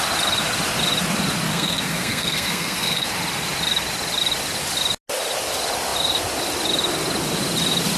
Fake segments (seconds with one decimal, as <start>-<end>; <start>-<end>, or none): 1.5-3.1